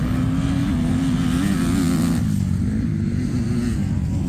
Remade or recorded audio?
recorded